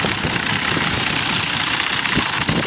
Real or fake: real